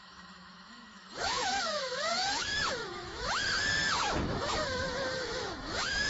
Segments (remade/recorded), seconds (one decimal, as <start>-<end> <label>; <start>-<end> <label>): 0.0-3.4 remade; 3.4-4.0 recorded; 4.0-6.1 remade